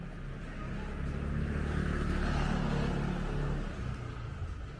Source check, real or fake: real